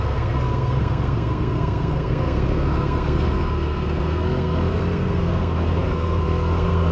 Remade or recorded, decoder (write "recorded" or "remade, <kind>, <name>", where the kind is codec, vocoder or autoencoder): remade, codec, SNAC